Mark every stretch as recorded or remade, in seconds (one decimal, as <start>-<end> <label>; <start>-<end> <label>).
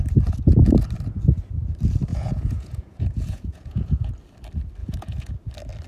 0.0-2.1 recorded; 2.1-4.1 remade; 4.1-4.8 recorded; 4.8-5.3 remade; 5.3-5.9 recorded